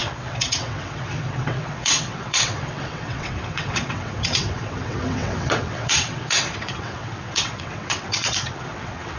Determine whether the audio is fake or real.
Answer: fake